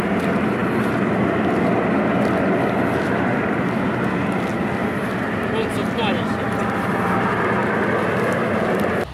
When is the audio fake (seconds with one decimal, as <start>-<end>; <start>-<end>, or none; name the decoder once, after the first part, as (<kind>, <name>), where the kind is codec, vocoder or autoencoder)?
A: none